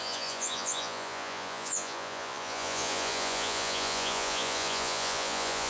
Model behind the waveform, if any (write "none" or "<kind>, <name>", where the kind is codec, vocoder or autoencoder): vocoder, Vocos